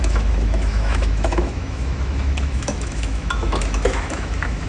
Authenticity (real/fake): fake